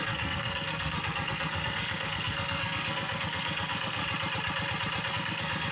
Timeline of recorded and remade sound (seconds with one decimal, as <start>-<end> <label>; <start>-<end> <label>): 0.0-4.0 remade; 4.0-5.1 recorded; 5.1-5.7 remade